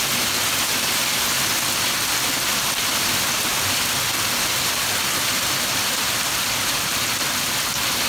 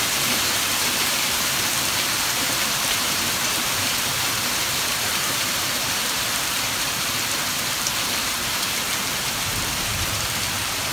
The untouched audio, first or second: first